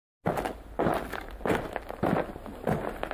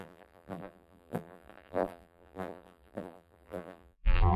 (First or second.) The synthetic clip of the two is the second